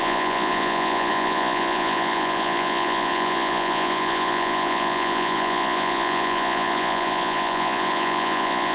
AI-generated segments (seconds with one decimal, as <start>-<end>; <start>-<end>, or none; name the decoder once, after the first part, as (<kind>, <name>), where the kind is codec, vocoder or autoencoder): 0.0-8.7 (vocoder, Vocos)